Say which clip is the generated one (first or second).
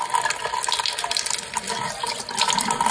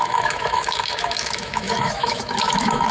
second